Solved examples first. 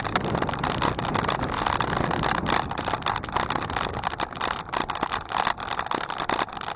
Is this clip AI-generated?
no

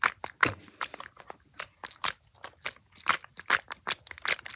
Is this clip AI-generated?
no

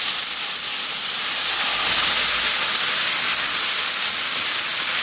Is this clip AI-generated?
no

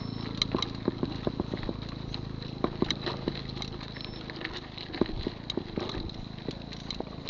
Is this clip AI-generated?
no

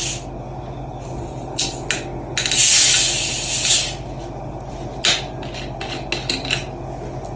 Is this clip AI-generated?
no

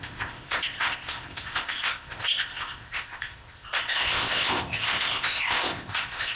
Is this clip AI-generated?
yes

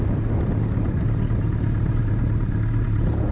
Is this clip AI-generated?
no